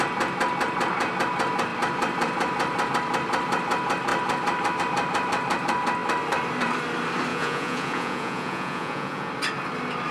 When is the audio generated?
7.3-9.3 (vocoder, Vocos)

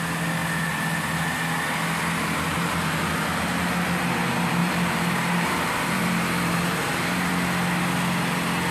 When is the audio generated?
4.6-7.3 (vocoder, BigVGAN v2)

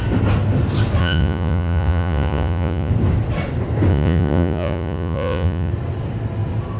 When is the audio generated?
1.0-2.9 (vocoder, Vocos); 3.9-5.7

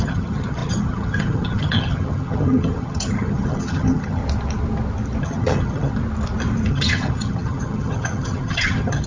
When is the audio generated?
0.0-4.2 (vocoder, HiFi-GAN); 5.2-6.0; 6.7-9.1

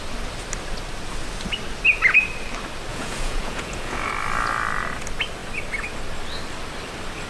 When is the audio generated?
2.9-4.1 (vocoder, Vocos)

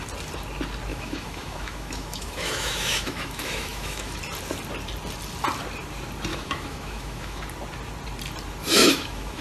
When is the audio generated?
0.9-4.2 (autoencoder, DAC-VAE); 6.3-7.4; 8.6-9.4

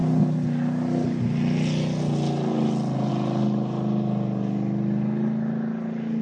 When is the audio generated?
none